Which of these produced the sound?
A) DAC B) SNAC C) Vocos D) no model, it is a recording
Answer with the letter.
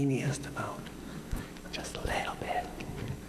A